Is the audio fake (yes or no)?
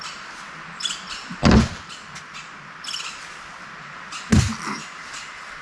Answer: no